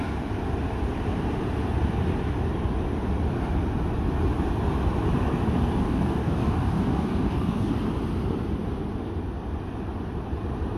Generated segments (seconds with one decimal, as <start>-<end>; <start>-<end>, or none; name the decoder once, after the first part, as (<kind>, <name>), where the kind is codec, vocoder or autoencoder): 5.8-7.7 (codec, DAC)